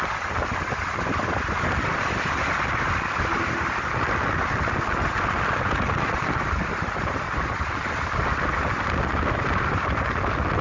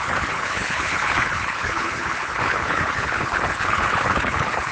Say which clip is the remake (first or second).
second